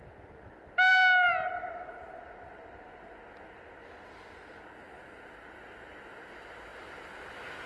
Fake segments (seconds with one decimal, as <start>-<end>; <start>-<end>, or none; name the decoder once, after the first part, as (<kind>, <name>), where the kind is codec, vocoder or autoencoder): none